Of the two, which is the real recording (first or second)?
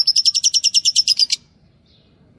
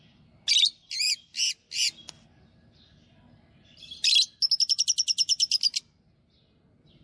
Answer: second